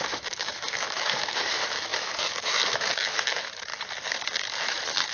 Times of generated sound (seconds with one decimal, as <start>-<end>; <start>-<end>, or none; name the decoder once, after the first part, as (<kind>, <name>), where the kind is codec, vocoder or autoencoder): 0.0-3.7 (autoencoder, DAC-VAE); 4.5-5.1